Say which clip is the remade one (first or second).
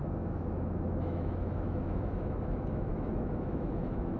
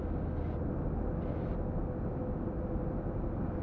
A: first